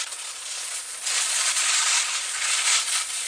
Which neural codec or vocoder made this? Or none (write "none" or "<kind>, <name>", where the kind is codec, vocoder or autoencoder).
vocoder, Vocos